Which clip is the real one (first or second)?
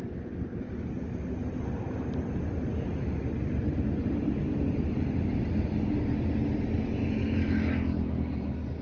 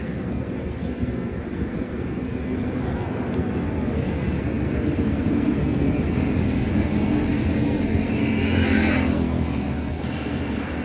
first